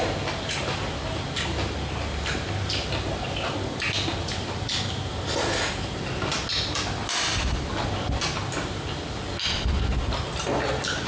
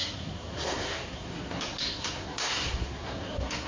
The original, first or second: first